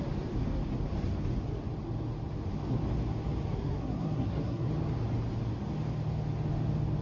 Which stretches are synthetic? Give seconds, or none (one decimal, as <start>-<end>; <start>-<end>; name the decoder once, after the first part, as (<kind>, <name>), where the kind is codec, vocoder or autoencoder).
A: 3.5-4.7 (codec, SNAC)